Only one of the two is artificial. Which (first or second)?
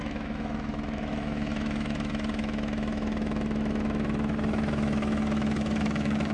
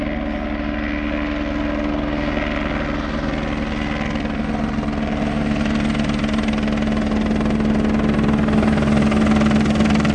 first